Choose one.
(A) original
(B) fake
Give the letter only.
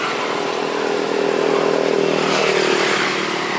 A